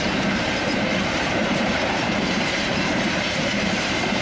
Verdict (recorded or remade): remade